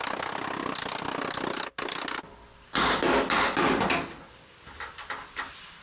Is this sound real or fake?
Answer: real